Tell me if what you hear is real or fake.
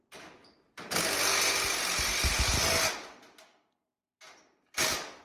real